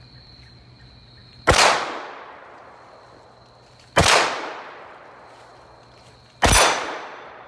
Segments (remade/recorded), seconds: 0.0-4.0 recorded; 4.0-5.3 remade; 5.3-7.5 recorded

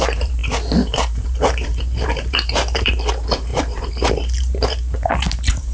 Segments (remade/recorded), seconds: 0.0-5.7 remade